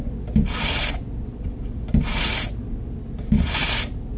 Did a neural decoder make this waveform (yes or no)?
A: no